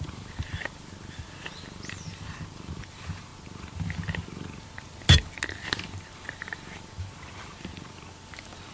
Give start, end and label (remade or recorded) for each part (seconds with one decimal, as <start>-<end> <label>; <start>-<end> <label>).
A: 0.0-3.3 remade; 3.3-6.1 recorded; 6.1-8.7 remade